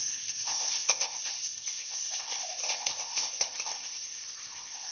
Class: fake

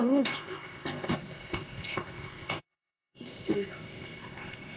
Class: fake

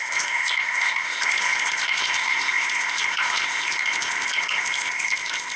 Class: fake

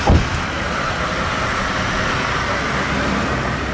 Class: real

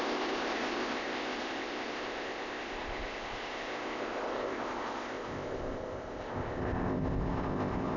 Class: fake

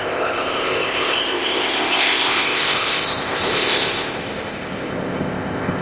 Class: fake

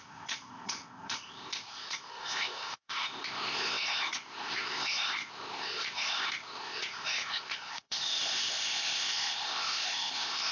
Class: fake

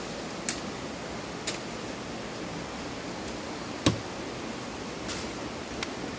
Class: real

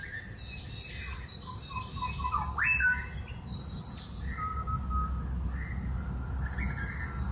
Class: real